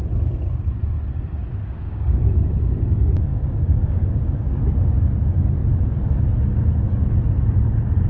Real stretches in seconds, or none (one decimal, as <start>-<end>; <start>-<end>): 0.0-1.5; 2.2-3.3; 4.6-8.1